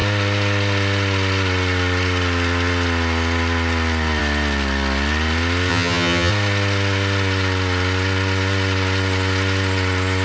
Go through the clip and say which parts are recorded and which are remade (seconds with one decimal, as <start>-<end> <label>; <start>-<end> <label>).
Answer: 0.0-5.7 recorded; 5.7-6.3 remade; 6.3-10.2 recorded